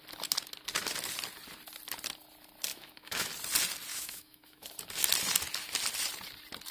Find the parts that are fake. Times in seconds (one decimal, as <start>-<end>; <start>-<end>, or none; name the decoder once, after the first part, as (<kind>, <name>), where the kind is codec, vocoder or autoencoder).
2.7-3.3 (autoencoder, DAC-VAE); 3.9-4.7

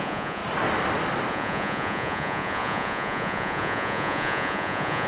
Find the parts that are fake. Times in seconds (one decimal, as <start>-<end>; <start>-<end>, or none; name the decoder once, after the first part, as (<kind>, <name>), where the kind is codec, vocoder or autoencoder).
0.0-0.4 (vocoder, Vocos); 1.3-5.1

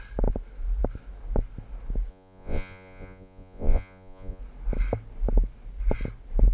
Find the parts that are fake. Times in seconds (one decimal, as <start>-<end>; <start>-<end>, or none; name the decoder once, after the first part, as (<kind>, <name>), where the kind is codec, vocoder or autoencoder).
2.1-4.4 (vocoder, Vocos)

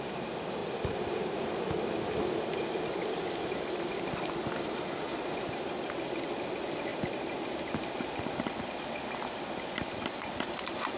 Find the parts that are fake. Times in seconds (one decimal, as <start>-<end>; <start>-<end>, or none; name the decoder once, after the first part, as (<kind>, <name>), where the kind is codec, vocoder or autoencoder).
0.6-1.5 (vocoder, BigVGAN v2); 5.1-5.7

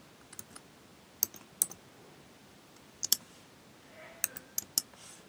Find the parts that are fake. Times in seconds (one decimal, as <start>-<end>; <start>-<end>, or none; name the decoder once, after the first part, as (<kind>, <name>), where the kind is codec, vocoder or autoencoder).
2.4-3.4 (vocoder, BigVGAN v2)

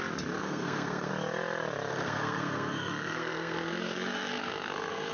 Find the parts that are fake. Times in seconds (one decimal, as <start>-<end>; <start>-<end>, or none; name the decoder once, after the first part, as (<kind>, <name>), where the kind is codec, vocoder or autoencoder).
0.4-1.1 (codec, SNAC); 1.9-5.1